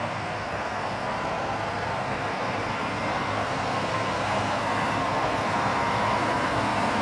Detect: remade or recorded remade